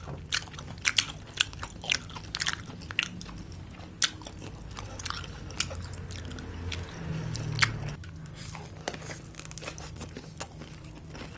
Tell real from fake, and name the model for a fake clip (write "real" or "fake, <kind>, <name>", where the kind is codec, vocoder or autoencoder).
real